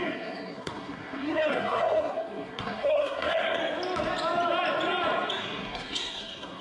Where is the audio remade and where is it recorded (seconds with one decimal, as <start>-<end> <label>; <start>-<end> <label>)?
0.0-3.6 remade; 3.6-5.3 recorded; 5.3-6.6 remade